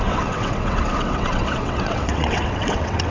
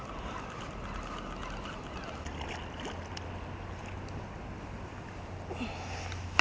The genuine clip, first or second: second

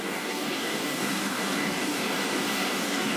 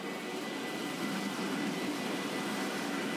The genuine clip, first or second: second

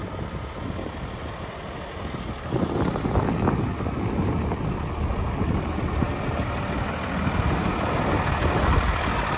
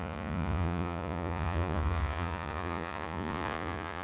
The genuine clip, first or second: first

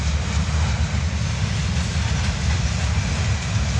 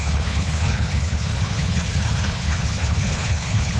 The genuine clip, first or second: first